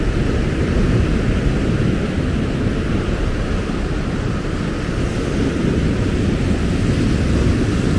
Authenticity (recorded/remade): recorded